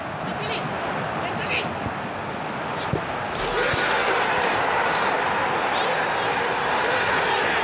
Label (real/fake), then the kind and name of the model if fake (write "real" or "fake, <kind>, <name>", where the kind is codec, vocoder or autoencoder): real